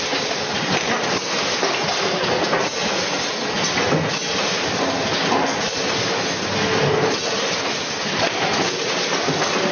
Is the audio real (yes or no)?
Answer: yes